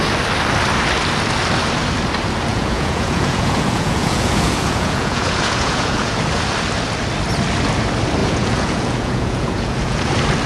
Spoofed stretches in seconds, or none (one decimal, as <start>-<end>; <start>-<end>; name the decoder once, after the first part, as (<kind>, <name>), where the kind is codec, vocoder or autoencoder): 2.5-6.2 (vocoder, Vocos); 8.2-10.1

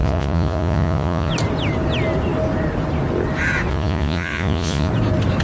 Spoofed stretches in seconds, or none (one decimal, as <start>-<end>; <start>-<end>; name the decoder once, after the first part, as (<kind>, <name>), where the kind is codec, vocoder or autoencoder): 0.0-1.3 (vocoder, Vocos); 3.7-4.9

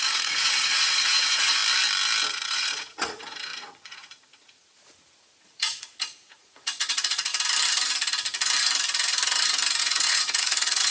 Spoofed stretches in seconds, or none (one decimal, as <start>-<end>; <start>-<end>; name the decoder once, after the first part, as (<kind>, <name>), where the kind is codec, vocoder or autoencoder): 0.0-1.6 (vocoder, Vocos); 2.3-7.3; 9.8-10.9

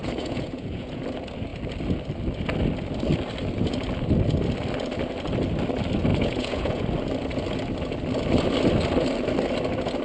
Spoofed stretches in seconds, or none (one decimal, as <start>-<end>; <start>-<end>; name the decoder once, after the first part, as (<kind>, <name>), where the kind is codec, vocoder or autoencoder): 0.0-1.0 (vocoder, Vocos); 6.1-6.8

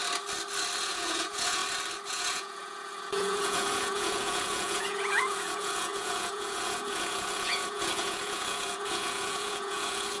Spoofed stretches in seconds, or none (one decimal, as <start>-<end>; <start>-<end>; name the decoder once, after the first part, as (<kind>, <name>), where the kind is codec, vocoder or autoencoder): 0.8-1.6 (vocoder, Vocos); 2.1-10.2